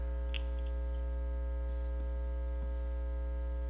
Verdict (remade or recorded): recorded